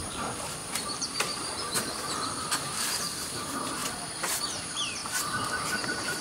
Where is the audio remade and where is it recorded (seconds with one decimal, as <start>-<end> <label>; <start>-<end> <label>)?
0.0-5.0 remade; 5.0-5.8 recorded; 5.8-6.2 remade